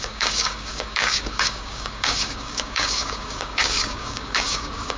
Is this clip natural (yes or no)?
no